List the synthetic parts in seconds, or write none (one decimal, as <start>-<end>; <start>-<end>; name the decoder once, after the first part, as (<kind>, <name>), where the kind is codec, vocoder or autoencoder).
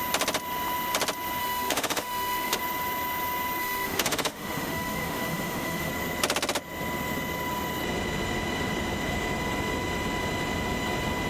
1.4-2.6 (autoencoder, DAC-VAE); 3.6-5.9